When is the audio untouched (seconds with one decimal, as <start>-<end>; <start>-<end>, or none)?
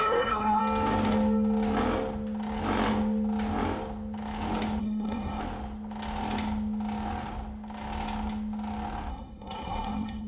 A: 0.6-4.8; 5.4-9.1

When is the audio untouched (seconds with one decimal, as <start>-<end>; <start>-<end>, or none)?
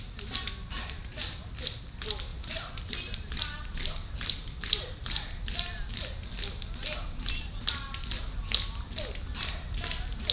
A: 0.0-10.3